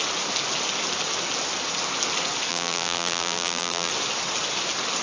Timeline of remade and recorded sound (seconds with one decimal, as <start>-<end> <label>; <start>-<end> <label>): 0.0-2.5 recorded; 2.5-3.9 remade; 3.9-5.0 recorded